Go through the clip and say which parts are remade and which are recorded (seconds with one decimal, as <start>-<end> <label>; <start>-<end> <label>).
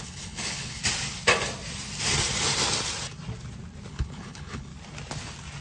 0.0-0.8 remade; 0.8-3.9 recorded; 3.9-4.7 remade; 4.7-5.6 recorded